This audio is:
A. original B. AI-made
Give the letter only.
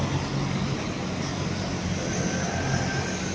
A